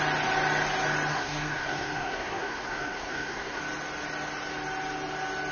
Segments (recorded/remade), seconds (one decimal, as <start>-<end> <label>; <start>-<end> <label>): 0.0-1.1 recorded; 1.1-3.6 remade; 3.6-5.5 recorded